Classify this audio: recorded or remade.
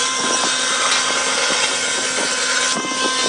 recorded